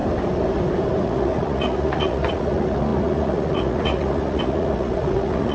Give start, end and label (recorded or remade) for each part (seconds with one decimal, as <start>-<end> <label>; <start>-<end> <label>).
0.0-1.0 recorded; 1.0-5.5 remade

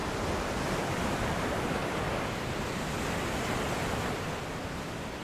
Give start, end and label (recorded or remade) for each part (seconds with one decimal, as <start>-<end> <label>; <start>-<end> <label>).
0.0-1.8 remade; 1.8-5.2 recorded

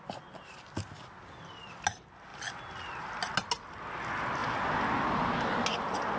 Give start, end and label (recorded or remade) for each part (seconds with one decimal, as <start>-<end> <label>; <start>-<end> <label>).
0.0-6.2 recorded